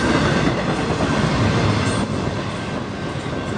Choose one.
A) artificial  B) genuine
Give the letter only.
B